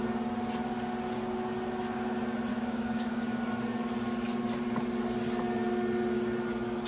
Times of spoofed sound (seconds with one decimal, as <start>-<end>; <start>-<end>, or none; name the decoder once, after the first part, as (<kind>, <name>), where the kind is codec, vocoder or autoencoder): 2.5-3.4 (codec, DAC)

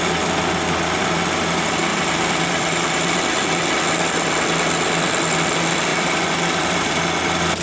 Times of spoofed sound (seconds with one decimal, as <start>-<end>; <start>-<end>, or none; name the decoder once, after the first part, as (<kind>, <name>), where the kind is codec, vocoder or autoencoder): 1.9-4.4 (vocoder, BigVGAN v2); 5.9-7.0